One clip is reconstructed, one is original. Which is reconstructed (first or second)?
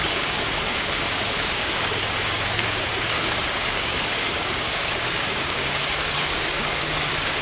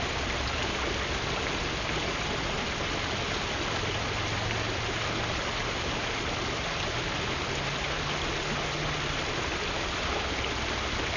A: first